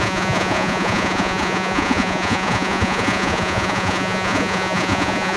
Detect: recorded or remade remade